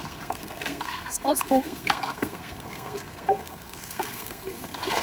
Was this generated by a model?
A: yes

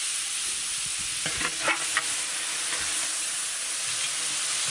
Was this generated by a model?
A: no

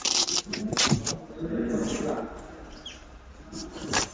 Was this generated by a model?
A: yes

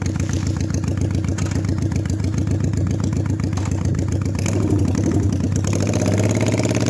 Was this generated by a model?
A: no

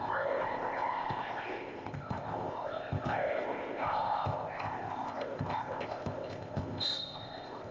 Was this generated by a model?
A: yes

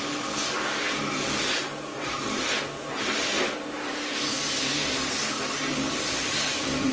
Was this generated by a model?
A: no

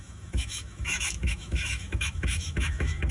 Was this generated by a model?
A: yes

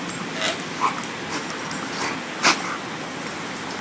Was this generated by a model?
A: no